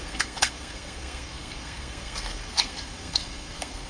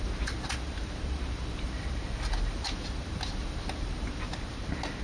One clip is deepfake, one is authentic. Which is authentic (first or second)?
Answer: second